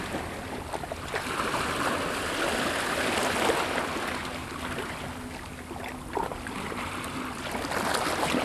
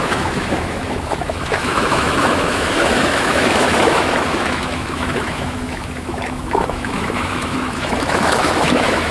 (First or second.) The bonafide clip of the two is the first